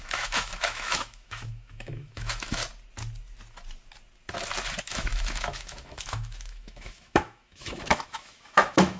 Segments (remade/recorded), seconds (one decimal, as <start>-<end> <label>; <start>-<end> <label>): 0.0-2.6 remade; 2.6-4.8 recorded; 4.8-9.0 remade